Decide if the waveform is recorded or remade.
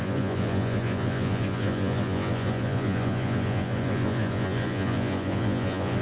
remade